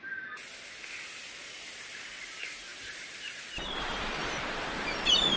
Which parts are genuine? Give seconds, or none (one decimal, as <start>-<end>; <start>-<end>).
0.0-2.7; 4.4-5.4